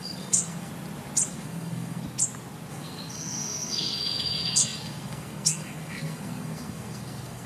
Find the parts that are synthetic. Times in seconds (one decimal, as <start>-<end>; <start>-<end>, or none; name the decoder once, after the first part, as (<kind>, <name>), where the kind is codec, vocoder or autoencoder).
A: 0.0-0.7 (codec, SNAC); 1.3-2.0; 2.7-7.5